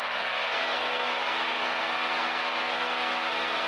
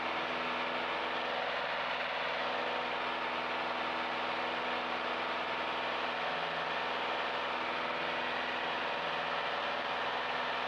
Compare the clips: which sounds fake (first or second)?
first